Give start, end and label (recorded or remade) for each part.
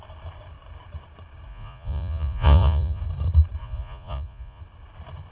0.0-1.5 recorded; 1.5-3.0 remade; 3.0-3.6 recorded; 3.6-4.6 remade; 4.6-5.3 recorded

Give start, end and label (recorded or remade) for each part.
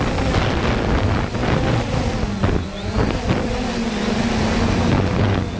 0.0-5.6 recorded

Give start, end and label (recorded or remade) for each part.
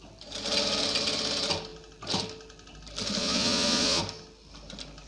0.0-3.2 recorded; 3.2-4.0 remade; 4.0-5.1 recorded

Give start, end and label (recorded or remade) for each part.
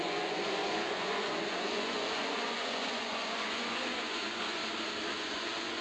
0.0-4.6 remade; 4.6-5.1 recorded; 5.1-5.8 remade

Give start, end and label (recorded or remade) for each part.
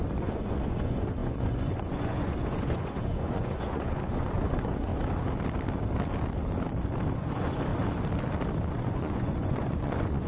0.0-4.9 remade; 4.9-7.1 recorded; 7.1-7.7 remade; 7.7-8.7 recorded; 8.7-10.3 remade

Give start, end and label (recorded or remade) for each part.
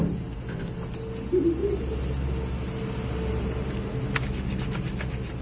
0.0-5.4 recorded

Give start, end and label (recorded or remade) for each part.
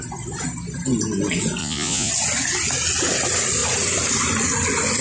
0.0-1.6 recorded; 1.6-2.1 remade; 2.1-5.0 recorded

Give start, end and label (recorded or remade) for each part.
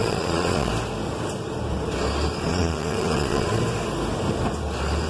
0.0-0.7 remade; 0.7-2.5 recorded; 2.5-3.6 remade; 3.6-5.1 recorded